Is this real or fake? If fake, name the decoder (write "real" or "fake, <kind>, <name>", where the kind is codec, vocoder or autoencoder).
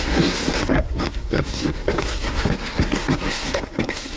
fake, codec, SNAC